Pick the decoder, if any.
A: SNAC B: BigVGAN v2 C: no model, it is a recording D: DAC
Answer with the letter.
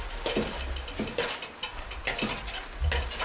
C